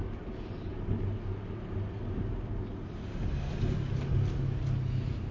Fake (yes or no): no